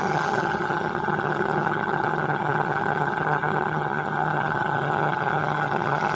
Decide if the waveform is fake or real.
fake